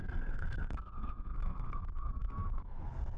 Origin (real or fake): fake